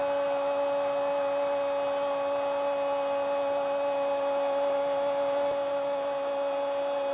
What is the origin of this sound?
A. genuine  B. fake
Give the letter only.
A